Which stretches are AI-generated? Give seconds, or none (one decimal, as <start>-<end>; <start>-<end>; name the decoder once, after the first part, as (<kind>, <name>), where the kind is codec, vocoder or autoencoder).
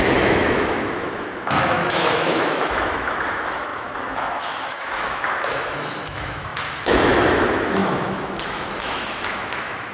0.0-9.9 (autoencoder, DAC-VAE)